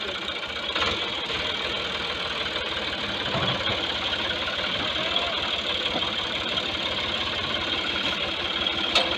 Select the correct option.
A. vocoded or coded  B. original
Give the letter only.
B